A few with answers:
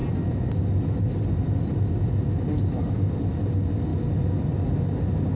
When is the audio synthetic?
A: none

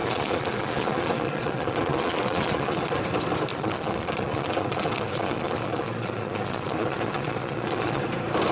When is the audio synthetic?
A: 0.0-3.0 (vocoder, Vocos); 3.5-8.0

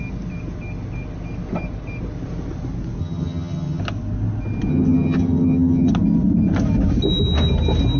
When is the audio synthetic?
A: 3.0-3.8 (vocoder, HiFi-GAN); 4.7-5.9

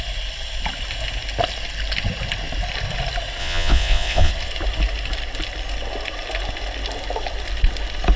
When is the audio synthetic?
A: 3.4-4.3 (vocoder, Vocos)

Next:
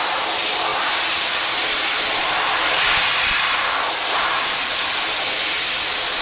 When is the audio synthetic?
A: none

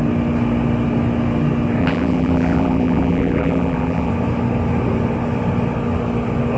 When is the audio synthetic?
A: 1.8-4.1 (vocoder, BigVGAN v2)

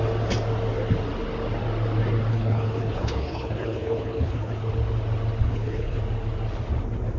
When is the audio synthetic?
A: 2.3-4.7 (codec, HILCodec); 5.4-6.0